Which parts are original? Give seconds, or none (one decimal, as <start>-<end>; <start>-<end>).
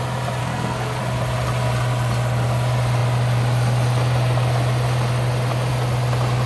0.0-0.4; 1.0-6.5